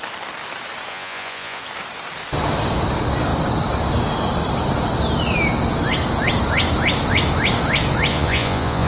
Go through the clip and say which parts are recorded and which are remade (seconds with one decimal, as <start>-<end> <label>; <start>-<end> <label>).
0.0-0.9 recorded; 0.9-1.6 remade; 1.6-8.1 recorded; 8.1-8.9 remade